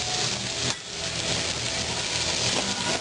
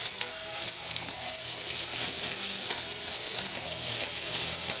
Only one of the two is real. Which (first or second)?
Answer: first